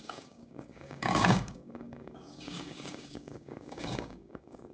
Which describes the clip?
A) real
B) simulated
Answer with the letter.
B